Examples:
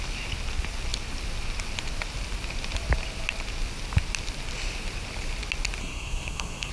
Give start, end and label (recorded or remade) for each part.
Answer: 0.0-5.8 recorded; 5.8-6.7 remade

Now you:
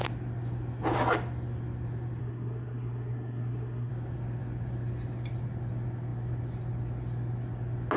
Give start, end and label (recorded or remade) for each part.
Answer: 0.0-2.2 recorded; 2.2-3.9 remade; 3.9-8.0 recorded